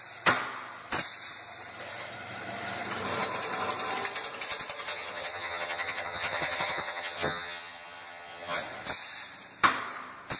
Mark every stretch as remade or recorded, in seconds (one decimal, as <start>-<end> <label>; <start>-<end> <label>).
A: 0.0-4.9 recorded; 4.9-8.6 remade; 8.6-10.4 recorded